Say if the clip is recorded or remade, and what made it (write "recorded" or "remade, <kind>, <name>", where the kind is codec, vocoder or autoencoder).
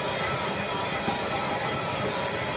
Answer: recorded